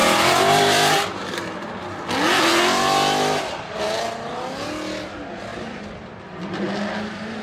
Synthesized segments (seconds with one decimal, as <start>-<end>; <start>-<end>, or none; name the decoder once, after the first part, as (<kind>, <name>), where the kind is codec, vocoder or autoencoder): 0.0-1.7 (vocoder, BigVGAN v2); 5.5-6.5